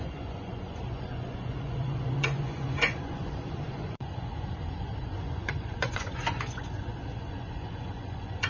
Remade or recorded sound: remade